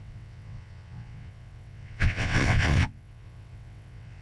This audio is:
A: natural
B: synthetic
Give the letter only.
B